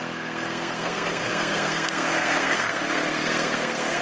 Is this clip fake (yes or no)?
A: yes